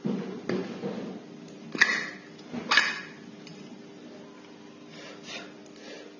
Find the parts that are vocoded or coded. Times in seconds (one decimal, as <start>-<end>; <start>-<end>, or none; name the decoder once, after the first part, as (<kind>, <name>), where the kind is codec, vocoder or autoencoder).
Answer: none